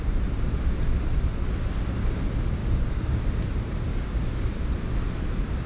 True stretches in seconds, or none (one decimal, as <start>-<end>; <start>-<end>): 0.0-2.6; 3.2-3.9; 4.6-5.7